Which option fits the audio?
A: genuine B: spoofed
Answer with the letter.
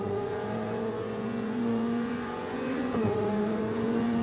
B